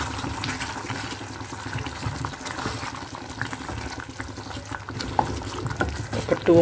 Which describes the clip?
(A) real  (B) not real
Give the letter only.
A